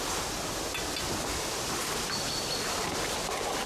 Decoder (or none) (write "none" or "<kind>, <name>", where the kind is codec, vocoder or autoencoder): none